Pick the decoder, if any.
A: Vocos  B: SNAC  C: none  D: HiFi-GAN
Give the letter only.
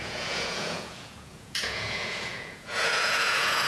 A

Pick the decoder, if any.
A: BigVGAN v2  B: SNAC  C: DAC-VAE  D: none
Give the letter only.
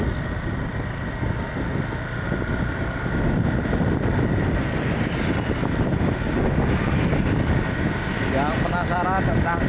D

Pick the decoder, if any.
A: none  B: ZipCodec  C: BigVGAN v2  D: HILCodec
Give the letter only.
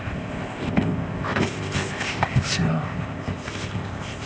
B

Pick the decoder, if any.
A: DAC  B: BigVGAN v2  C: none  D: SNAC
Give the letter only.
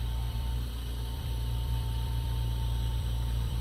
B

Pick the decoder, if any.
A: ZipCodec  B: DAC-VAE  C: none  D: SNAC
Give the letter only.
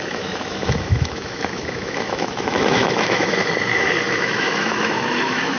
B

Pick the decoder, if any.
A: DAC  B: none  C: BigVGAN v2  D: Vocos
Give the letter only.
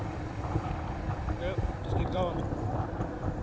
C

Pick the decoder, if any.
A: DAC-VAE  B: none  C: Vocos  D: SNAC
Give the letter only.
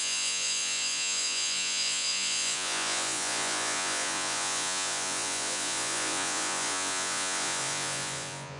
C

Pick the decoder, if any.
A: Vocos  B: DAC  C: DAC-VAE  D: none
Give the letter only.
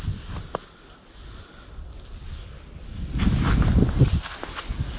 D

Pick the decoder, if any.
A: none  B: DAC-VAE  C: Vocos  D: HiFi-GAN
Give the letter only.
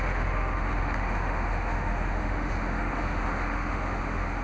B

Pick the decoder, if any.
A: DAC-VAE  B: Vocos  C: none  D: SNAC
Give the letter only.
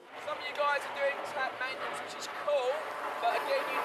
C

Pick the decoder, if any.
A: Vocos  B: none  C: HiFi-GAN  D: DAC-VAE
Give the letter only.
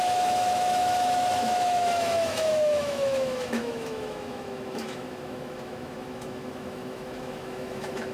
D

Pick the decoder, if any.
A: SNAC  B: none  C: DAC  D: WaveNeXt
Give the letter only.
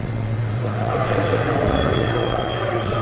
D